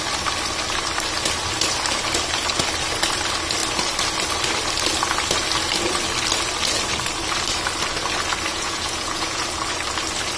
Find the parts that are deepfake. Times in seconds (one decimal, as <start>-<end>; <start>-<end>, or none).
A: 8.5-9.4